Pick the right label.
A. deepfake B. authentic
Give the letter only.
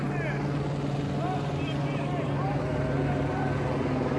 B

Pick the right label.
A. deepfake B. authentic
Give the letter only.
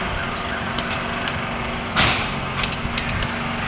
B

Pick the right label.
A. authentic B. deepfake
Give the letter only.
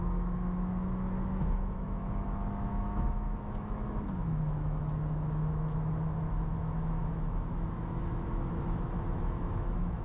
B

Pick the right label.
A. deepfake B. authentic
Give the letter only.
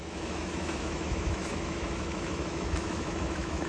A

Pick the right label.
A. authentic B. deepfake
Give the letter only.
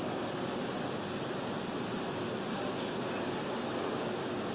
A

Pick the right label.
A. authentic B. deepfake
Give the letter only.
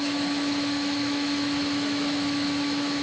B